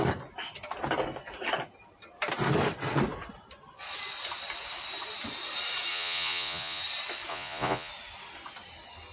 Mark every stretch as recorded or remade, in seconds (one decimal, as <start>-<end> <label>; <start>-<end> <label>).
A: 0.0-5.9 recorded; 5.9-6.8 remade; 6.8-7.3 recorded; 7.3-7.9 remade; 7.9-9.1 recorded